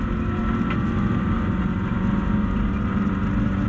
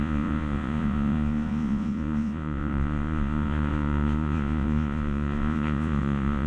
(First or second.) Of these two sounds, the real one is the first